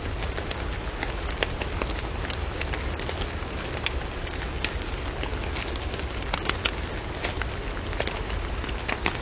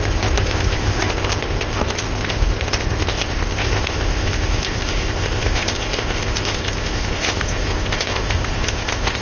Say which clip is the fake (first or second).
second